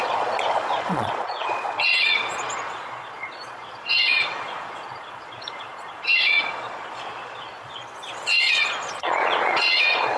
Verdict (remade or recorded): remade